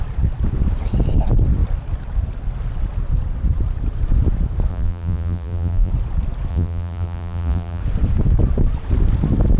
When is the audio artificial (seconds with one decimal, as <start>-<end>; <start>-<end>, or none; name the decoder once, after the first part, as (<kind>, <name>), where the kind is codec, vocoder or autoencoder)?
4.7-5.9 (vocoder, BigVGAN v2); 6.5-7.8